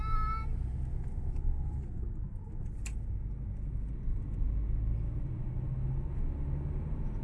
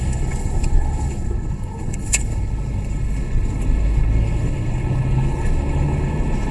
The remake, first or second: second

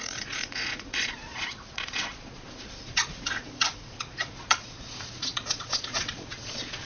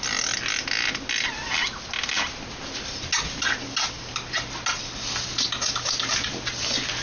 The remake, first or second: first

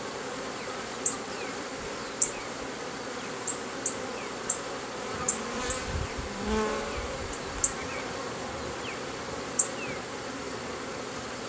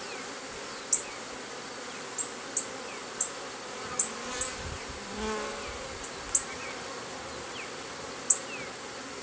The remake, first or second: first